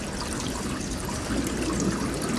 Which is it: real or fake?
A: real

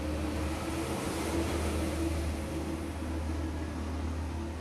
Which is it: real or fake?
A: real